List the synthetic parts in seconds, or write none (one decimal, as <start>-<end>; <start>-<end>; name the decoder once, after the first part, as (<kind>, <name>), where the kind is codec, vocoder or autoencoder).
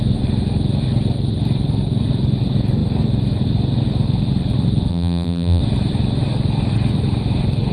4.9-5.6 (vocoder, BigVGAN v2)